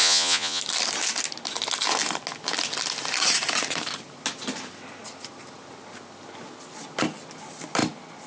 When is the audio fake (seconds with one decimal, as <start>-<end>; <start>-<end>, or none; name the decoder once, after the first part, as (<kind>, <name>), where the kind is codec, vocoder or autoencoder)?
0.0-0.6 (vocoder, Vocos)